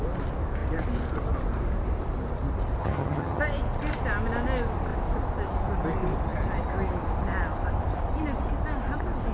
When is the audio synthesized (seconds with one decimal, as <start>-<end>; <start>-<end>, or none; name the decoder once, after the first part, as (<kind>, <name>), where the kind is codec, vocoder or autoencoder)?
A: 2.8-3.4 (vocoder, HiFi-GAN)

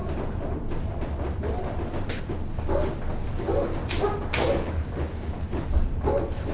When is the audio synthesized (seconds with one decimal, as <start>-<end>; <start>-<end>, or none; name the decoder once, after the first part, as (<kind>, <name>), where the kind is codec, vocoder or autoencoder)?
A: none

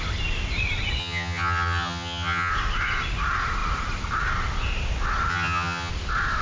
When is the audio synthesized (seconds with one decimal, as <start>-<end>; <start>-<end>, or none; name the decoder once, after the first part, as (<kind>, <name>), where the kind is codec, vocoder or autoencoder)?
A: 1.0-2.5 (vocoder, HiFi-GAN); 5.3-5.9

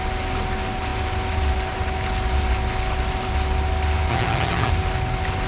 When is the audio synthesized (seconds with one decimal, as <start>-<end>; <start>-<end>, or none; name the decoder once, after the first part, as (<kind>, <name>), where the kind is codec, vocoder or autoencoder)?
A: 4.1-4.7 (vocoder, HiFi-GAN)

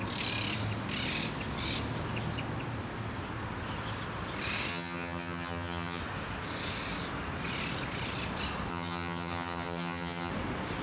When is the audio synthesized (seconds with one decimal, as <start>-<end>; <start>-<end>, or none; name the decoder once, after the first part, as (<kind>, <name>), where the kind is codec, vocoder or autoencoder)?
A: 4.7-6.0 (vocoder, HiFi-GAN); 8.7-10.3

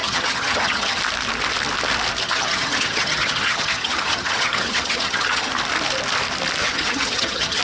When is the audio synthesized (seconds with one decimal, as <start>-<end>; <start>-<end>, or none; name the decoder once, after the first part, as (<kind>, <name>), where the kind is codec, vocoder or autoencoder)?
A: 0.0-1.0 (vocoder, HiFi-GAN); 2.2-5.5; 6.6-7.6